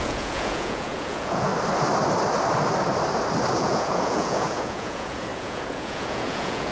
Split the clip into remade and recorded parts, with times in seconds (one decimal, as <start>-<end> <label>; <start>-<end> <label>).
0.0-1.5 remade; 1.5-3.6 recorded; 3.6-6.7 remade

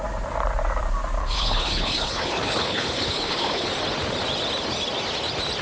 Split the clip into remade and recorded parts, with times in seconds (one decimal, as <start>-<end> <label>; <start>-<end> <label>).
0.0-1.2 recorded; 1.2-3.7 remade; 3.7-5.6 recorded

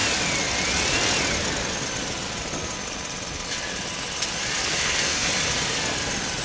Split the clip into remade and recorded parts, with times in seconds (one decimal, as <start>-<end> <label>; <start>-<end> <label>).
0.0-4.6 recorded; 4.6-5.3 remade; 5.3-6.4 recorded

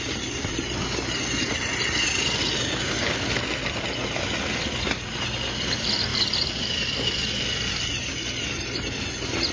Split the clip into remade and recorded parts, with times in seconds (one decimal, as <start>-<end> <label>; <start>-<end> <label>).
0.0-6.1 recorded; 6.1-7.2 remade; 7.2-9.5 recorded

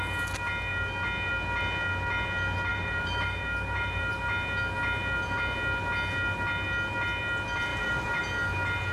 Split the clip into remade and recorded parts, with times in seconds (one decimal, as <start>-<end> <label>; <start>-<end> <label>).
0.0-2.7 recorded; 2.7-4.1 remade; 4.1-7.7 recorded; 7.7-8.2 remade; 8.2-8.9 recorded

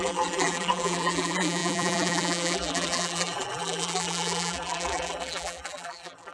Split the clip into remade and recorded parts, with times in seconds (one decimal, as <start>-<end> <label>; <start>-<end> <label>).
0.0-6.3 remade

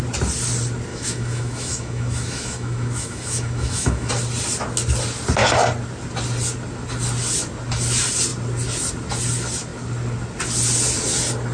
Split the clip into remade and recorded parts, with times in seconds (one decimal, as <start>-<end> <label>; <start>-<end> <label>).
0.0-0.9 recorded; 0.9-4.1 remade; 4.1-11.5 recorded